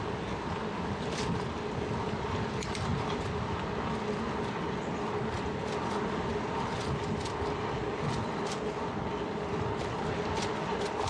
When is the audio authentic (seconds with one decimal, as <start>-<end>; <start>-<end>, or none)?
0.0-11.1